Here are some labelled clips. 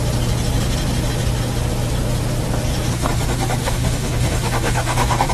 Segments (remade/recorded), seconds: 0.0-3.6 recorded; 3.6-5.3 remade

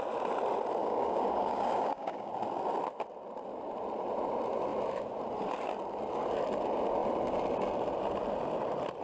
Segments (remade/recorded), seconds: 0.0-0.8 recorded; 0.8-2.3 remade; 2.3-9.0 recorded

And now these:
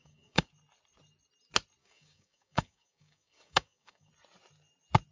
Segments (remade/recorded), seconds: 0.0-0.5 remade; 0.5-1.8 recorded; 1.8-4.1 remade; 4.1-5.1 recorded

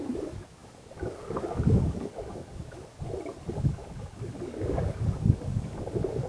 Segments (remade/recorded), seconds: 0.0-2.9 remade; 2.9-3.6 recorded; 3.6-6.3 remade

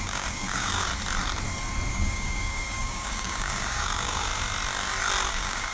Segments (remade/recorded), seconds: 0.0-0.9 remade; 0.9-1.9 recorded; 1.9-4.3 remade; 4.3-5.3 recorded; 5.3-5.7 remade

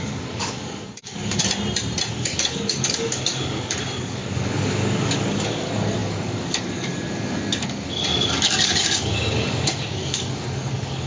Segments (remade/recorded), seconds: 0.0-1.4 remade; 1.4-2.1 recorded; 2.1-11.1 remade